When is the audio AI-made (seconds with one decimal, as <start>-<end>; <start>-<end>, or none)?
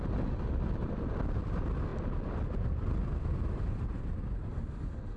none